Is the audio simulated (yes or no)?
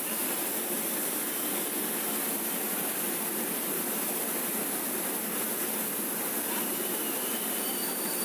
no